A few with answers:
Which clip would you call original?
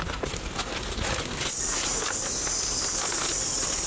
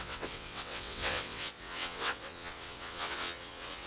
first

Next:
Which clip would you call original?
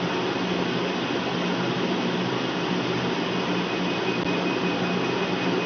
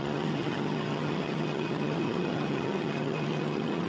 first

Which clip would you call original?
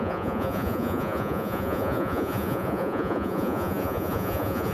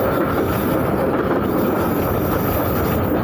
second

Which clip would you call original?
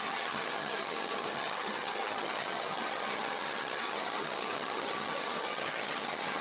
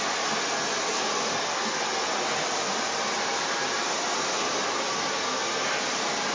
second